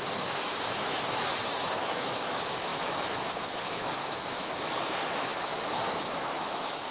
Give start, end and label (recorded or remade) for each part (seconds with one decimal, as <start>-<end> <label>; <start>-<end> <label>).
0.0-6.9 remade